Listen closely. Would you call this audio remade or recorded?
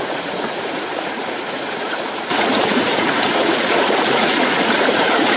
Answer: remade